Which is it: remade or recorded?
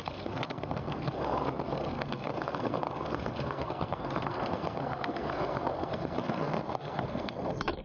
remade